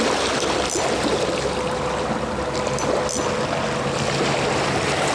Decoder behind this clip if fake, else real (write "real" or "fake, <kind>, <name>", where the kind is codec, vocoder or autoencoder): real